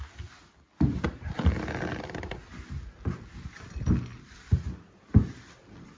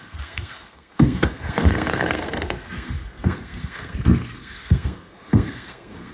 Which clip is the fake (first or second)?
second